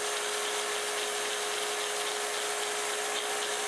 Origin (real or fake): real